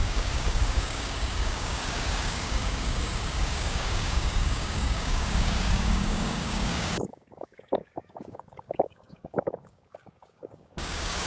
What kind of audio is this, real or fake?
fake